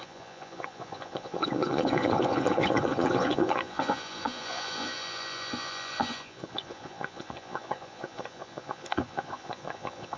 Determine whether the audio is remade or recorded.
remade